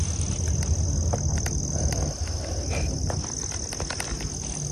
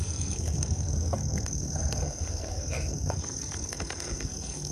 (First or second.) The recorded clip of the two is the first